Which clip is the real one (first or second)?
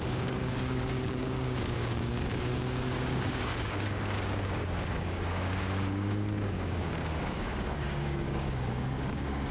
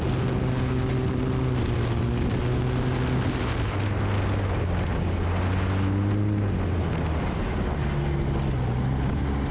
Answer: second